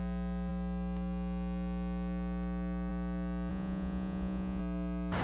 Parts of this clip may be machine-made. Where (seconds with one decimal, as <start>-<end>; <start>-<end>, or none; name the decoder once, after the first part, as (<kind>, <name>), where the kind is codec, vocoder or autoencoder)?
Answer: 3.5-4.6 (vocoder, Vocos)